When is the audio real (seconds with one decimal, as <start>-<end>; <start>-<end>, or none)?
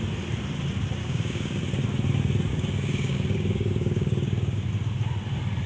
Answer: 0.0-1.0; 1.6-2.5; 4.6-5.7